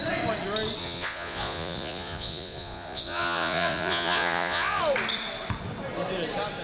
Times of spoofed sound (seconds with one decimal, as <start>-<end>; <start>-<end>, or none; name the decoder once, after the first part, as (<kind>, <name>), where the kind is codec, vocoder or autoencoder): 0.8-4.8 (vocoder, Vocos)